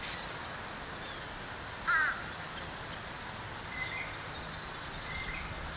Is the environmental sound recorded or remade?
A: recorded